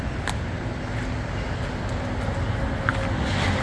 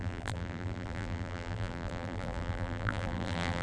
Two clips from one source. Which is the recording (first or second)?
first